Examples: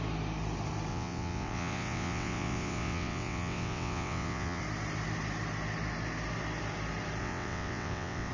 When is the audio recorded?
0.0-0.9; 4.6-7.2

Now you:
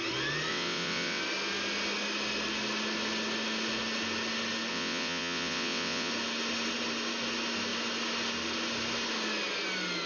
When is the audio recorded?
0.0-0.5; 1.2-4.7; 6.1-10.1

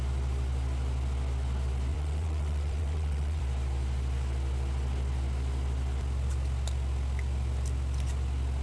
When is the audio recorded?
0.0-1.9; 3.4-8.6

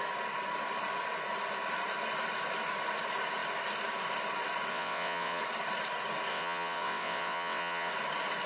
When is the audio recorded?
0.0-4.7; 5.4-6.3; 7.9-8.5

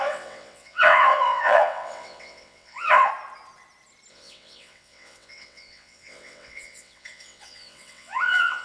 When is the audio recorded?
3.1-4.1

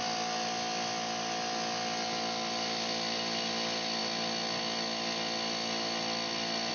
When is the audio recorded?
0.0-6.7